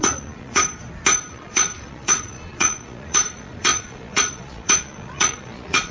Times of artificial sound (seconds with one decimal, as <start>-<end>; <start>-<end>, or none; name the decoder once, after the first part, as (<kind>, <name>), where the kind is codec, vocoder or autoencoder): 0.0-0.6 (vocoder, Vocos); 1.3-5.9